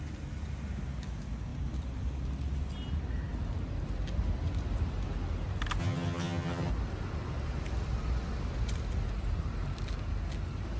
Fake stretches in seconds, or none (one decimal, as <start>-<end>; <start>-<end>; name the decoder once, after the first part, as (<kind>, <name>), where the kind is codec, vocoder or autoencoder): 5.8-6.7 (vocoder, HiFi-GAN)